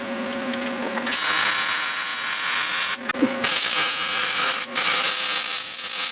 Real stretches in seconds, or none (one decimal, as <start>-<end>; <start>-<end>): 0.0-4.2; 5.1-6.1